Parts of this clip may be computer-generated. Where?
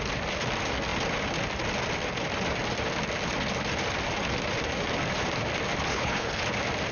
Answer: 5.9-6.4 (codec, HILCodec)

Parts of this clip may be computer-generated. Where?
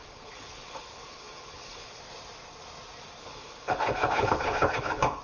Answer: 0.0-2.0 (codec, HILCodec); 3.2-5.2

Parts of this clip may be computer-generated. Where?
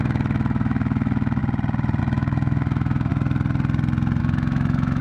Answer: 0.0-1.4 (autoencoder, DAC-VAE); 2.0-3.1; 4.2-5.0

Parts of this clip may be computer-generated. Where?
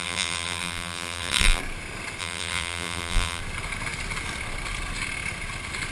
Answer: 0.0-1.6 (vocoder, BigVGAN v2); 2.2-3.4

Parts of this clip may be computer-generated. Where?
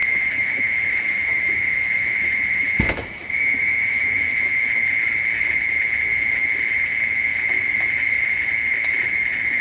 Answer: 0.0-4.6 (autoencoder, DAC-VAE)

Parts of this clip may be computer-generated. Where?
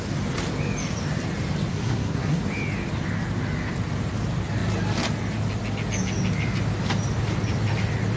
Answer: 1.7-2.4 (codec, SNAC)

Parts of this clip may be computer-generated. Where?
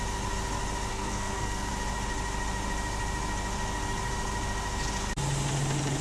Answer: 0.9-1.7 (codec, SNAC)